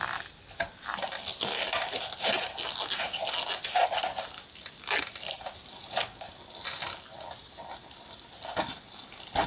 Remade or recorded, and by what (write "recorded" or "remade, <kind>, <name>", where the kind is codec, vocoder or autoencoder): recorded